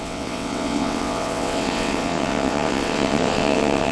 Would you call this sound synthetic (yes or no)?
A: yes